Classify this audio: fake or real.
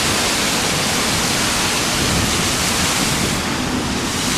real